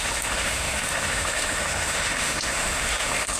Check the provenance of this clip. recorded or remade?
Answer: remade